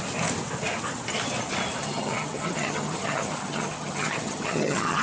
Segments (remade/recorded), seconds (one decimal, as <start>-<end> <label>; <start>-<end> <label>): 0.0-1.8 recorded; 1.8-5.0 remade